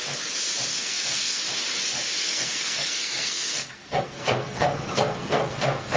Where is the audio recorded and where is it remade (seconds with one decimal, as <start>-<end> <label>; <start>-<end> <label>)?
0.0-0.7 recorded; 0.7-1.4 remade; 1.4-2.2 recorded; 2.2-6.0 remade